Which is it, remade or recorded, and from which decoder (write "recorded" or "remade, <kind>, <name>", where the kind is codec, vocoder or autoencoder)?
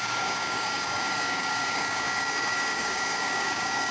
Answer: remade, codec, DAC